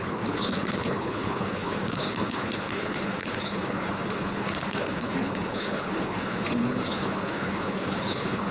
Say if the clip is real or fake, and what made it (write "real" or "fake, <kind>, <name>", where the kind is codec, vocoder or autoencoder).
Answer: fake, codec, HILCodec